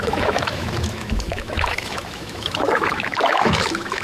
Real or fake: fake